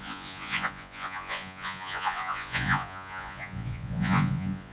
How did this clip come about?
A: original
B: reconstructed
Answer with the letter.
B